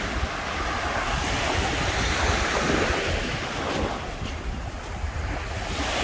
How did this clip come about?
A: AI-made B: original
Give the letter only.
B